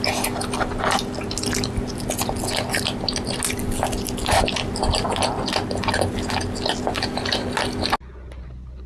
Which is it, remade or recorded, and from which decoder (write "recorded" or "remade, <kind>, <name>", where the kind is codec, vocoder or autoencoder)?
recorded